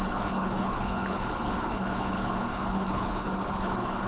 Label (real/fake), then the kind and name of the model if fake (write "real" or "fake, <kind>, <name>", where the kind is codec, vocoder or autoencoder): fake, codec, HILCodec